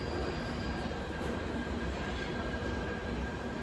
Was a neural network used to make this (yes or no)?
yes